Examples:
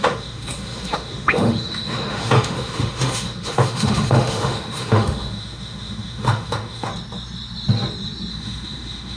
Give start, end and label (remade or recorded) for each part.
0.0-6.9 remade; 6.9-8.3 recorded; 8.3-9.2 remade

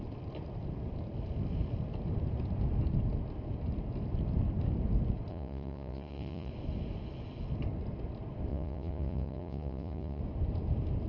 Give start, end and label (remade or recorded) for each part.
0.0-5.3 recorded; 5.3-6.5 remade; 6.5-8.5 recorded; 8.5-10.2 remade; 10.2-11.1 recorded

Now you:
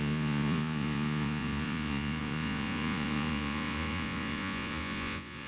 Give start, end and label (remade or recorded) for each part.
0.0-5.5 remade

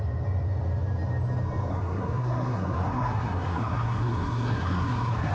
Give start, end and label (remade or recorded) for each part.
0.0-1.7 recorded; 1.7-5.3 remade

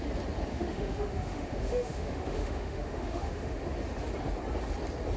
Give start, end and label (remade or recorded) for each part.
0.0-0.5 recorded; 0.5-3.6 remade; 3.6-5.2 recorded

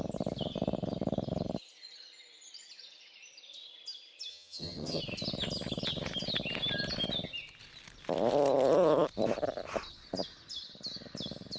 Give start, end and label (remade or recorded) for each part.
0.0-4.3 recorded; 4.3-5.0 remade; 5.0-11.6 recorded

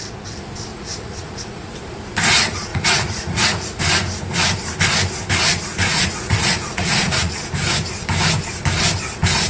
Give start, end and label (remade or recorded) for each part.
0.0-0.7 recorded; 0.7-1.8 remade; 1.8-2.7 recorded; 2.7-3.8 remade; 3.8-5.7 recorded; 5.7-7.3 remade; 7.3-9.5 recorded